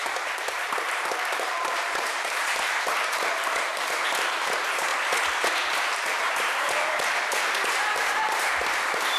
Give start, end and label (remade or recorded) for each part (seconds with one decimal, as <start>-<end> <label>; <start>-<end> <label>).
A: 0.0-4.9 remade; 4.9-5.5 recorded; 5.5-9.2 remade